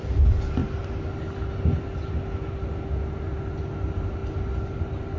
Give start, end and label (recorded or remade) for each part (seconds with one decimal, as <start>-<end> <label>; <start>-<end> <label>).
0.0-5.2 recorded